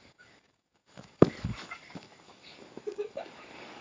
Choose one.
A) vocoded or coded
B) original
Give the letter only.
A